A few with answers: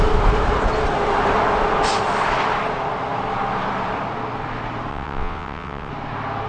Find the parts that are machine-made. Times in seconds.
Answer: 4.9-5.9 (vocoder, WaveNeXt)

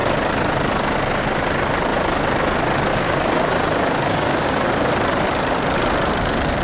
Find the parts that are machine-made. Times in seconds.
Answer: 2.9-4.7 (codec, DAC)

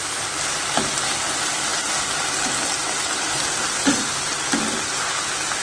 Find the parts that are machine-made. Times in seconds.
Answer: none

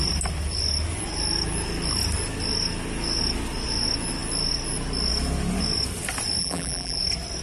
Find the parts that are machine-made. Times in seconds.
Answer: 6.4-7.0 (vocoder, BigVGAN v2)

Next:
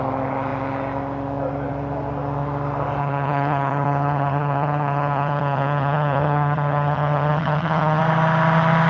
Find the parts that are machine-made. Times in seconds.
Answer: 3.0-8.0 (vocoder, HiFi-GAN)

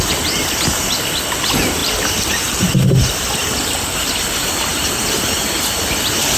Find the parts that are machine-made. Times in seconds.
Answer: none